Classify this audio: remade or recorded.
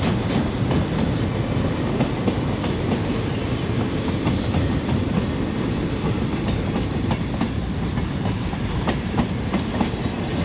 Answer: recorded